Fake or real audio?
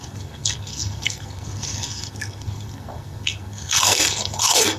fake